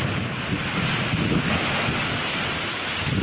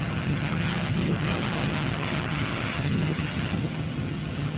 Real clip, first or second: first